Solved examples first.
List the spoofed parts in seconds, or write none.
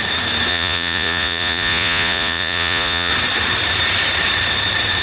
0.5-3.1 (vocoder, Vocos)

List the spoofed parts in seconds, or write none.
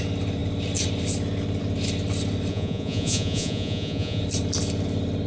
2.5-4.2 (vocoder, Vocos)